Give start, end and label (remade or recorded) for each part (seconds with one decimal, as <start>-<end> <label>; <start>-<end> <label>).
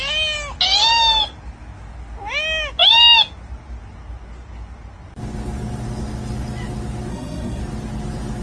0.0-7.1 recorded; 7.1-7.6 remade; 7.6-8.4 recorded